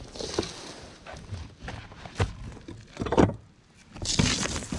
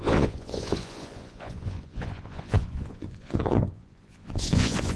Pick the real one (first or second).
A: first